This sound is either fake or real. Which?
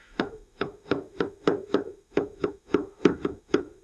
fake